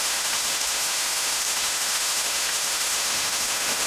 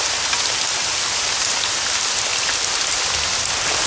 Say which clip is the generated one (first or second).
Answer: first